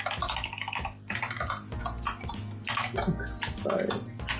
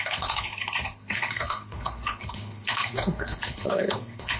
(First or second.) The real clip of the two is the first